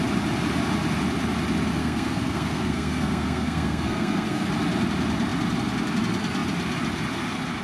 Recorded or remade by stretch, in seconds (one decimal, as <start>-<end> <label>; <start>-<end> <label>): 0.0-1.8 recorded; 1.8-4.5 remade; 4.5-7.6 recorded